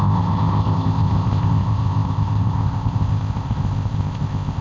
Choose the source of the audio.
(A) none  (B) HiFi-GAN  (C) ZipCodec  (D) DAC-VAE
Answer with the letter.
C